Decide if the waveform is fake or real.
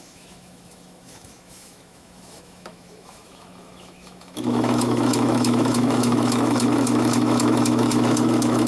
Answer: fake